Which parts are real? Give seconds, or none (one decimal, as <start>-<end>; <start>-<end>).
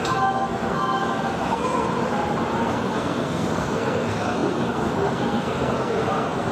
1.9-2.6